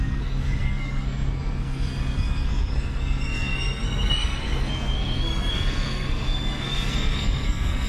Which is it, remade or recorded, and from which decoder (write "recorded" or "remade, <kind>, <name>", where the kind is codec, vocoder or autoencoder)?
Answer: remade, codec, SNAC